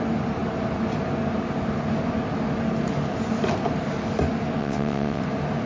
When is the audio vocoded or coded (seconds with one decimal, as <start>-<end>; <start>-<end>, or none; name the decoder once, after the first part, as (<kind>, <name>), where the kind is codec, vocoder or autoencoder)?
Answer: 4.6-5.2 (vocoder, WaveNeXt)